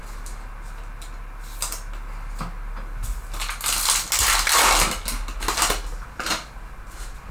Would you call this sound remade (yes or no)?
no